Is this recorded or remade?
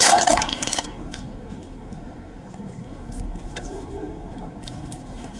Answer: remade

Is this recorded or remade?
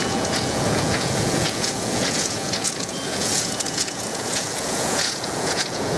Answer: remade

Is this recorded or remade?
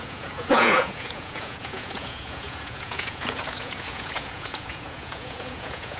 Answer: remade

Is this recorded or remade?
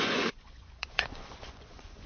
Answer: remade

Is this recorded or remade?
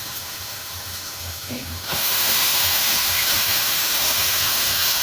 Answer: remade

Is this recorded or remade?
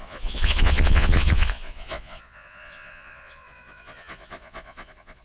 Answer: remade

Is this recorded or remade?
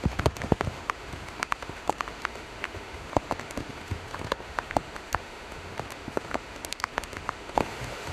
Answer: remade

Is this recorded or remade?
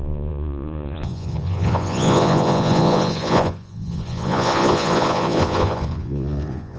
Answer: remade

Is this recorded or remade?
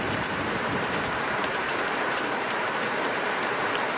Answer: remade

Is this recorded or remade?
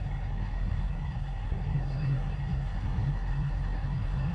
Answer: remade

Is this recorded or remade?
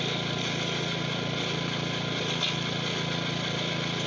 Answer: recorded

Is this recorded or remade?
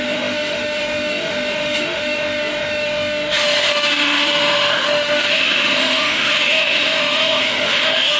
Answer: remade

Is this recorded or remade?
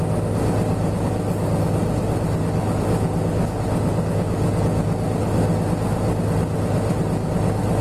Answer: recorded